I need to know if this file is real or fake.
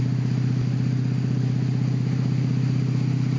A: real